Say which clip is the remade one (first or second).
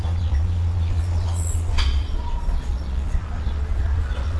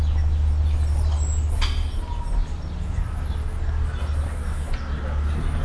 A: first